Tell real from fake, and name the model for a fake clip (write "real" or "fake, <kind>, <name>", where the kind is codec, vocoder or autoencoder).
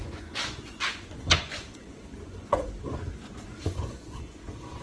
fake, vocoder, Vocos